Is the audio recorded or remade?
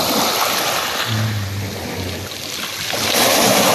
recorded